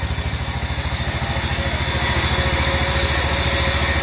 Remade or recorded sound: recorded